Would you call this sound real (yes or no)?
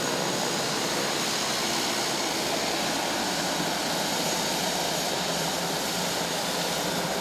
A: yes